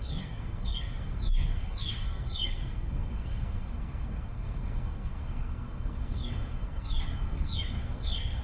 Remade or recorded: remade